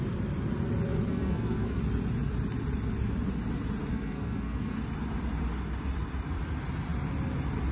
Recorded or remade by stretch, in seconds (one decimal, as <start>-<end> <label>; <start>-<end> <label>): 0.0-1.1 recorded; 1.1-1.8 remade; 1.8-3.9 recorded; 3.9-4.8 remade; 4.8-7.7 recorded